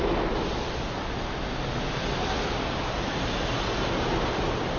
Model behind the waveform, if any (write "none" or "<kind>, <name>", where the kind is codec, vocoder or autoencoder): none